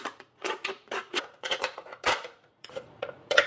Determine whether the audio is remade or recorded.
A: remade